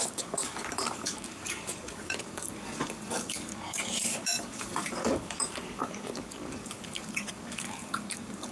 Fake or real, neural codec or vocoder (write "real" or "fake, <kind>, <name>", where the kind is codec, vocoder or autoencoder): fake, codec, DAC